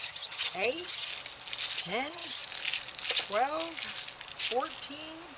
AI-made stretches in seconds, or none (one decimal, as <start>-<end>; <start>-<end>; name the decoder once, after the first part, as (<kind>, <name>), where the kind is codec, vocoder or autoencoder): 0.0-1.1 (vocoder, HiFi-GAN); 1.8-2.4